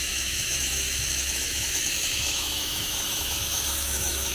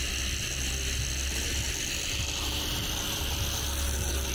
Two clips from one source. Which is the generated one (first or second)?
first